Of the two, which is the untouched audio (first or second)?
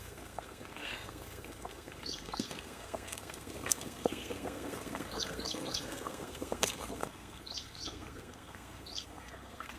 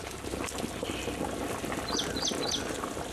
second